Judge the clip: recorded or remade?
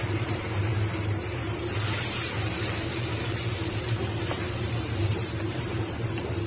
remade